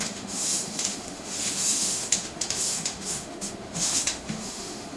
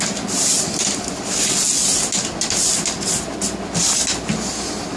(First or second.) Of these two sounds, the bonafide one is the second